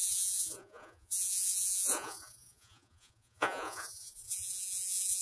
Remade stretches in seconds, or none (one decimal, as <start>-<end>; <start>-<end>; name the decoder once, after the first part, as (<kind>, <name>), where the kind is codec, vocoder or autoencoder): 0.0-5.2 (vocoder, Vocos)